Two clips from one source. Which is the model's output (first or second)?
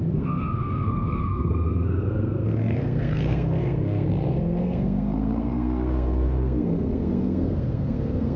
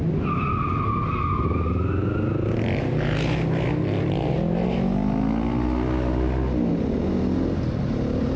first